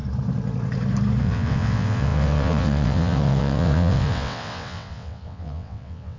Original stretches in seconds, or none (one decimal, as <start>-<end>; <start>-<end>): 0.0-1.2